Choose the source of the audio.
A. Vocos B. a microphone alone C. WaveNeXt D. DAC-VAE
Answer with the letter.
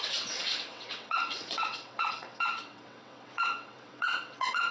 C